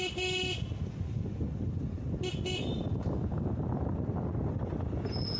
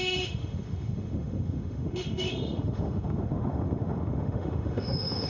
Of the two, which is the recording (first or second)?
first